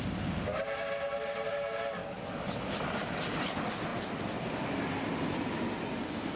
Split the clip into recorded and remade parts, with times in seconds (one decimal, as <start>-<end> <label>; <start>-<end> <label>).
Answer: 0.0-2.0 recorded; 2.0-2.6 remade; 2.6-6.4 recorded